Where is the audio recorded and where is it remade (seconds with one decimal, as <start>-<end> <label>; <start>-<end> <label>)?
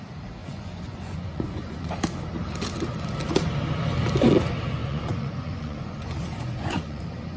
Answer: 0.0-0.4 recorded; 0.4-1.9 remade; 1.9-4.8 recorded; 4.8-7.0 remade; 7.0-7.4 recorded